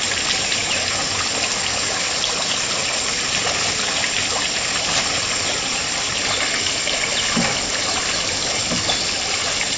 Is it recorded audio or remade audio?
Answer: recorded